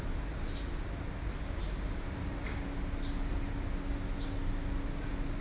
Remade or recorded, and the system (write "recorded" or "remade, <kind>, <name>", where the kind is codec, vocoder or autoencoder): recorded